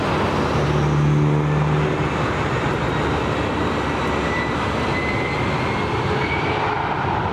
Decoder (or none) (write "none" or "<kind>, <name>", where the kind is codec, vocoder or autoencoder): none